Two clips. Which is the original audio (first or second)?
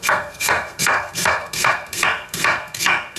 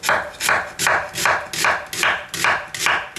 second